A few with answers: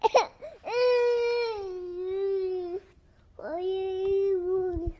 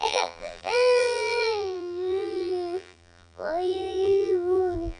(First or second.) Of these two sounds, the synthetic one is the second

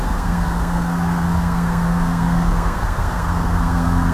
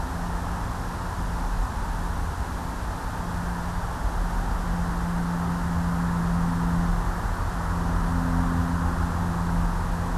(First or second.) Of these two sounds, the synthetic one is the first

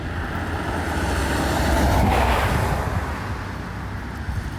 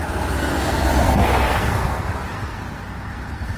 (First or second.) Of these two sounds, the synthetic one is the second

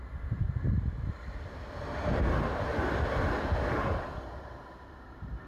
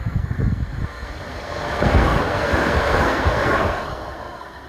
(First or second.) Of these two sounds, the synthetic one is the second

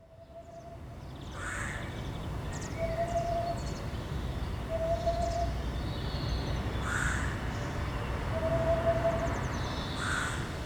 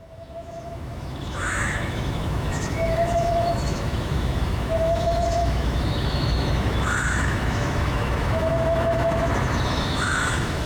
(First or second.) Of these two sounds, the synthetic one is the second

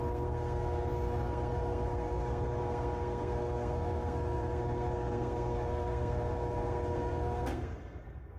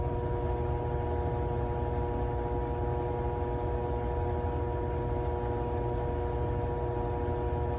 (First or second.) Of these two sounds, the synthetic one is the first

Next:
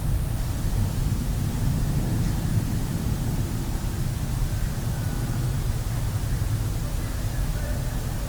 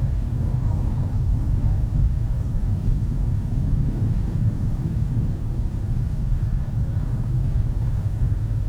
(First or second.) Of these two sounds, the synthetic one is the second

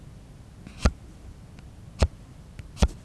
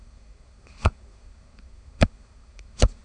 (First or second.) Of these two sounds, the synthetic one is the second